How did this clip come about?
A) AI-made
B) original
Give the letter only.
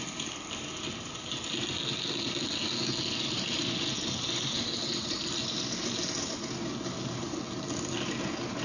B